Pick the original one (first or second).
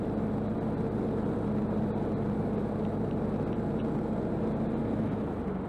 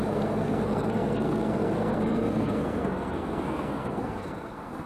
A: first